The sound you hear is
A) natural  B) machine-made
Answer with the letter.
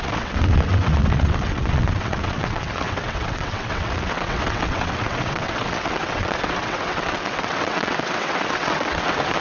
B